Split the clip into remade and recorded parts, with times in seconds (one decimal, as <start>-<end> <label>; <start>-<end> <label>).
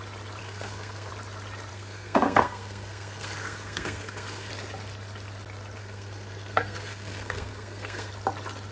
0.0-0.4 recorded; 0.4-1.1 remade; 1.1-1.7 recorded; 1.7-4.5 remade; 4.5-5.8 recorded; 5.8-8.1 remade; 8.1-8.7 recorded